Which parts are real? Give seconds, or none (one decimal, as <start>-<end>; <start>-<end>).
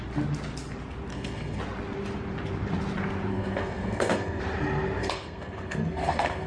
0.0-1.1; 1.6-3.3; 4.4-5.0